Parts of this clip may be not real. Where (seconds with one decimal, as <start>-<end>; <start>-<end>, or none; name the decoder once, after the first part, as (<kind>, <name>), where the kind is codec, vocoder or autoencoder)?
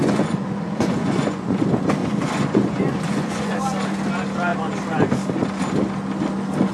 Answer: 0.0-1.6 (vocoder, Vocos); 2.0-3.6